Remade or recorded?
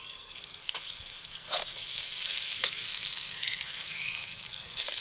remade